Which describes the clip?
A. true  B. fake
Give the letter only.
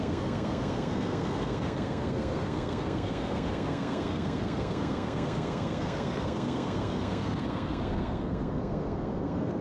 B